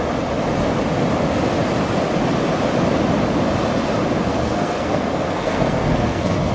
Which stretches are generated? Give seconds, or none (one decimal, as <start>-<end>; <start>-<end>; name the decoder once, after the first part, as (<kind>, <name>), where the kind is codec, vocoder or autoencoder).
4.3-6.5 (codec, SNAC)